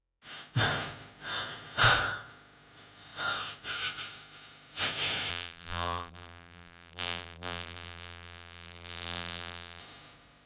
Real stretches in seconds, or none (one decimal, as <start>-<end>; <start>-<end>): 0.0-5.3; 9.8-10.5